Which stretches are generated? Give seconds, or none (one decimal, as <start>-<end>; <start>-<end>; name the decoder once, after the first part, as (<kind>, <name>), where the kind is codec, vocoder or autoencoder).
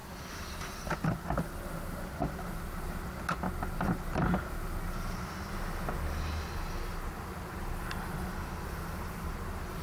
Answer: none